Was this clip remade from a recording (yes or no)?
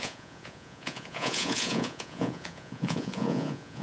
yes